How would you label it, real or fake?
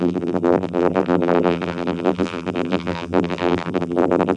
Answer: fake